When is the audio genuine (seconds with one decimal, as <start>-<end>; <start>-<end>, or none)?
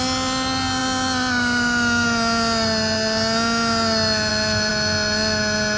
0.0-5.8